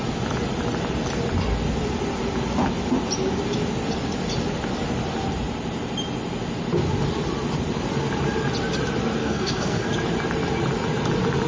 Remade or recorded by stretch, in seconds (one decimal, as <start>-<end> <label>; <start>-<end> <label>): 0.0-9.2 recorded; 9.2-9.9 remade; 9.9-11.5 recorded

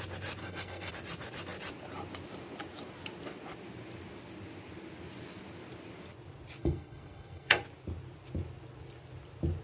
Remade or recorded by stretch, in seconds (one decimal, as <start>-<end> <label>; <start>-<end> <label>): 0.0-0.4 recorded; 0.4-0.9 remade; 0.9-6.6 recorded; 6.6-7.6 remade; 7.6-9.6 recorded

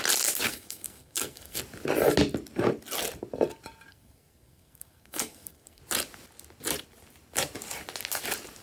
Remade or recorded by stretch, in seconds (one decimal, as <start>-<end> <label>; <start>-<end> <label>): 0.0-0.5 recorded; 0.5-1.6 remade; 1.6-3.9 recorded; 3.9-5.8 remade; 5.8-8.6 recorded

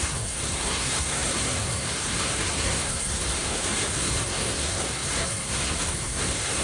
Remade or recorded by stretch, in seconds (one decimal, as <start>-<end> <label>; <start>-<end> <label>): 0.0-6.6 remade